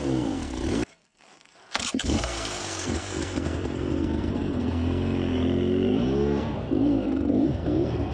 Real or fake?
fake